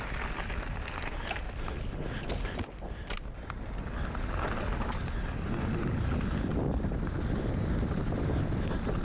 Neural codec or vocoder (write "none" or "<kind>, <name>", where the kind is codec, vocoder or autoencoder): none